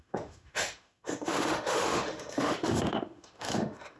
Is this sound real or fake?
fake